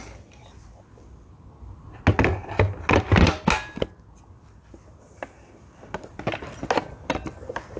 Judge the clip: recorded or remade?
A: recorded